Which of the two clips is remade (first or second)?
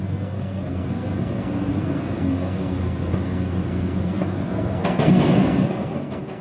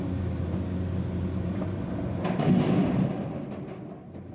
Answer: first